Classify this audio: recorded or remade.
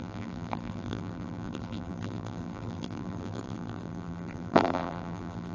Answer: remade